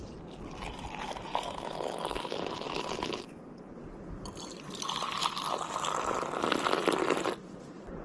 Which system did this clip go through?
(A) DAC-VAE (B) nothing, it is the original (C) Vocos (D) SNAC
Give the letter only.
B